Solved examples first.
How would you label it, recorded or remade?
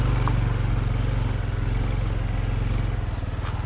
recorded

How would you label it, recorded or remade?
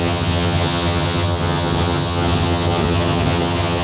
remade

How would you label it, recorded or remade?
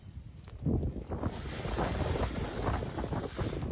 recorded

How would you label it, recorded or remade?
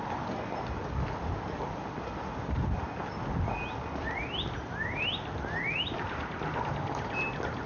recorded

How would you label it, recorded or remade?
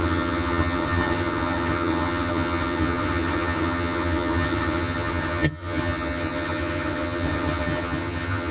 remade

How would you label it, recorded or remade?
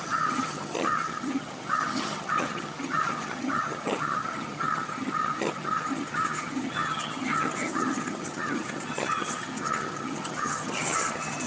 remade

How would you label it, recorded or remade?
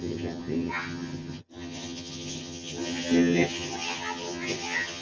remade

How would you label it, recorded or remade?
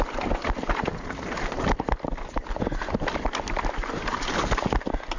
recorded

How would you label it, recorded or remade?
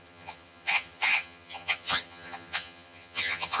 remade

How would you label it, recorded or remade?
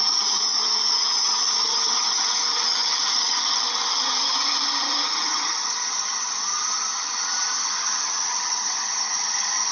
remade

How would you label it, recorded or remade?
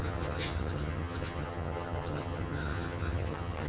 remade